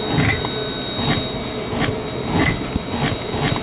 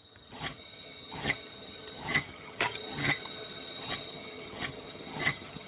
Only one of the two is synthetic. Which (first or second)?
second